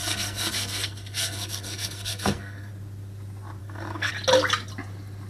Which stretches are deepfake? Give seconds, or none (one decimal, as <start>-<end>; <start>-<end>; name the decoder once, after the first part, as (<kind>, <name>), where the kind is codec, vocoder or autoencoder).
0.0-2.7 (codec, SNAC); 3.6-4.1